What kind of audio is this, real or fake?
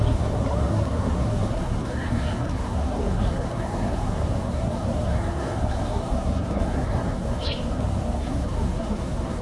fake